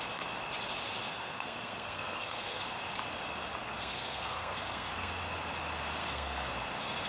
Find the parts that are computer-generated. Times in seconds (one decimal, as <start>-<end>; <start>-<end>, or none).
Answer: 1.1-2.6; 3.6-5.1; 6.0-6.5